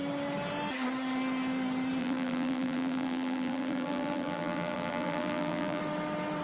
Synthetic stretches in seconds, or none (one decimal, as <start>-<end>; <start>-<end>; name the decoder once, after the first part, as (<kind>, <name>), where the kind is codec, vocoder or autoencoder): 2.0-5.8 (vocoder, BigVGAN v2)